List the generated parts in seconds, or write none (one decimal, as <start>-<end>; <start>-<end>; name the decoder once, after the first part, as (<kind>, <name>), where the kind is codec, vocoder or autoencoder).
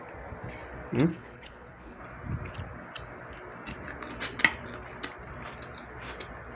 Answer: 1.1-2.0 (codec, HILCodec)